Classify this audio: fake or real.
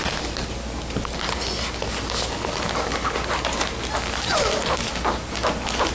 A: real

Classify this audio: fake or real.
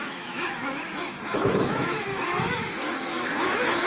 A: fake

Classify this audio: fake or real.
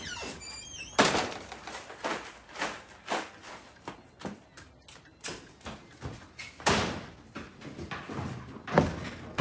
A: real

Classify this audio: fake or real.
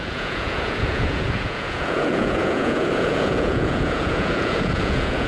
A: fake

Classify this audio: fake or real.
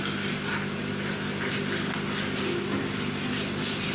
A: real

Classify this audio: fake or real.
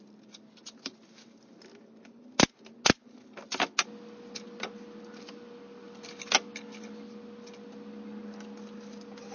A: real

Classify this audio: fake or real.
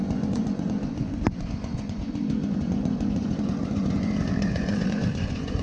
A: fake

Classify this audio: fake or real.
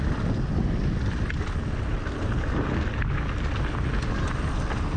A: real